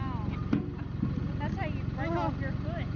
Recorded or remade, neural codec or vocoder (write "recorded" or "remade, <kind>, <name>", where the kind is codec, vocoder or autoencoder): recorded